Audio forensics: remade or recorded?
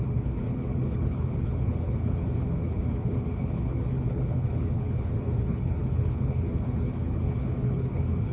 remade